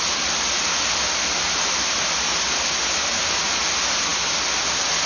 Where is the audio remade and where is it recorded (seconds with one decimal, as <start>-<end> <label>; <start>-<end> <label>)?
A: 0.0-5.1 recorded